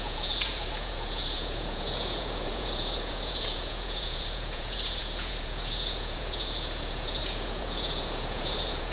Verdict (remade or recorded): remade